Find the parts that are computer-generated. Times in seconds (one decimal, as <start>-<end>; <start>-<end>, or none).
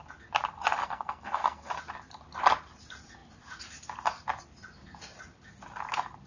0.8-1.7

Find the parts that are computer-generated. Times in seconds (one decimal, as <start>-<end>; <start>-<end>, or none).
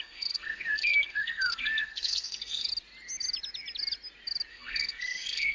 0.0-2.7; 4.5-5.5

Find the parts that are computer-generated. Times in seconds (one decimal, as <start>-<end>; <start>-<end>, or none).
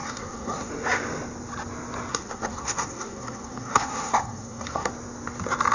0.0-0.7; 2.1-4.9